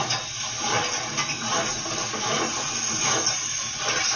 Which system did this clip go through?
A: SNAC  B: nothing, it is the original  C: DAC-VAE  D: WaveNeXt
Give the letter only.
B